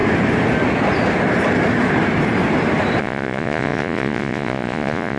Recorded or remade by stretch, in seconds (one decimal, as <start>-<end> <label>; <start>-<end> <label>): 0.0-3.0 recorded; 3.0-5.2 remade